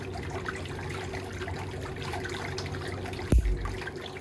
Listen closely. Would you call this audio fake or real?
real